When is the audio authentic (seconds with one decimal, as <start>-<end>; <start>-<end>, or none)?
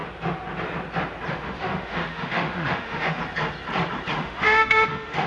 0.0-1.3; 3.2-4.2